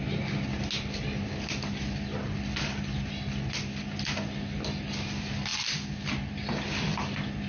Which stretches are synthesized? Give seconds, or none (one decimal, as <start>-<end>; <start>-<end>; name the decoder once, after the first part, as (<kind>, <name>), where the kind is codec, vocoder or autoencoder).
none